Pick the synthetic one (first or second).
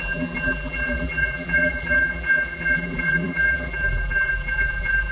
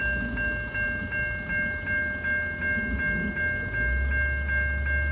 first